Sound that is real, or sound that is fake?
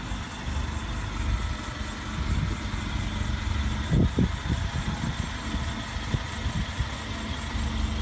real